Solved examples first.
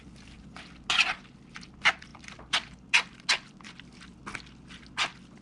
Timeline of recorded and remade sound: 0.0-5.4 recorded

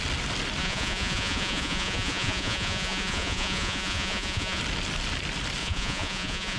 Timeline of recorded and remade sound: 0.0-0.6 recorded; 0.6-4.6 remade; 4.6-5.6 recorded; 5.6-6.6 remade

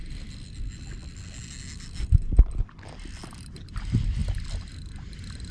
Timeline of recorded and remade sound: 0.0-5.5 recorded

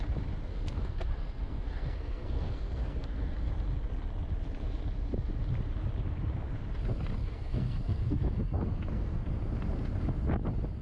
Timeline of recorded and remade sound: 0.0-0.5 recorded; 0.5-3.5 remade; 3.5-7.2 recorded; 7.2-9.3 remade; 9.3-10.8 recorded

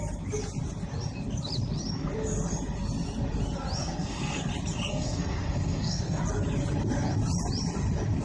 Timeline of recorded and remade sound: 0.0-3.8 recorded; 3.8-4.4 remade; 4.4-4.9 recorded; 4.9-6.2 remade; 6.2-8.2 recorded

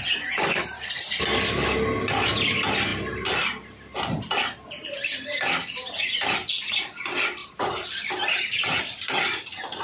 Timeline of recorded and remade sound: 0.0-6.4 recorded; 6.4-7.0 remade; 7.0-7.4 recorded; 7.4-8.8 remade; 8.8-9.8 recorded